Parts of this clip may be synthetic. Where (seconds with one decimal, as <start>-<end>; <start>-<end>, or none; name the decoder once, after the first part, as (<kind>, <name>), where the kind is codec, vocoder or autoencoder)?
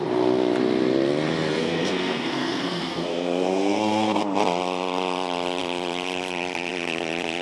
1.6-4.2 (codec, SNAC)